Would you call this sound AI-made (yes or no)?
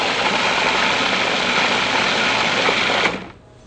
no